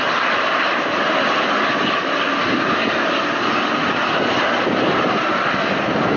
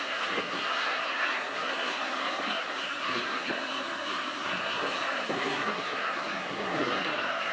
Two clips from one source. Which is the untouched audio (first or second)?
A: first